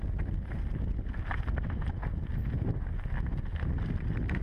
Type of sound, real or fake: real